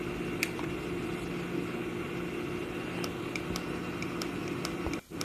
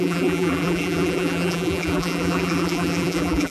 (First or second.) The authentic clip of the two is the first